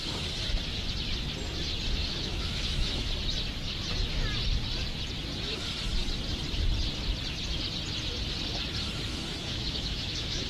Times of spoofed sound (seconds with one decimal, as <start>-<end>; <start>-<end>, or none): 2.0-3.1; 9.1-10.5